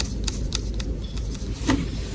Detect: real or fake real